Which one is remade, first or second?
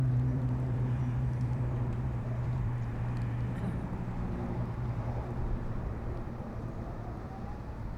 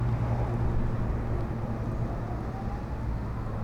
first